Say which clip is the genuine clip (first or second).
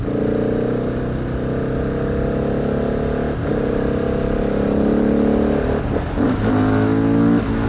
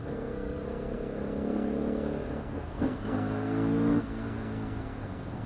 first